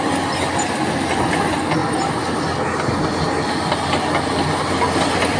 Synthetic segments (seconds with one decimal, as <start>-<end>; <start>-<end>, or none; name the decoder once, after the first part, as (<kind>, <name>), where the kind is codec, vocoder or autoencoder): none